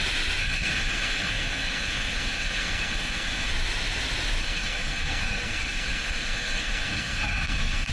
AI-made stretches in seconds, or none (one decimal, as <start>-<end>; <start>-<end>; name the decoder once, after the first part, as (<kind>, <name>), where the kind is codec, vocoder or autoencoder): 0.4-3.5 (codec, SNAC); 4.4-7.9